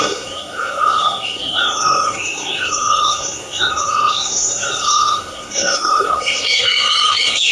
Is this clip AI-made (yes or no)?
yes